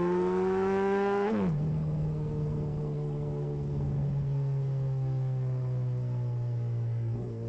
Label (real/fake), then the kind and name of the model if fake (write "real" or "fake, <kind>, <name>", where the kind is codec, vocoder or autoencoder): fake, codec, SNAC